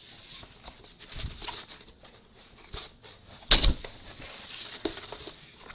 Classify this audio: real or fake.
real